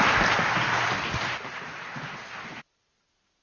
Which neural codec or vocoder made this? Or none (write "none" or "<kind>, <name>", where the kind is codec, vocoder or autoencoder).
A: none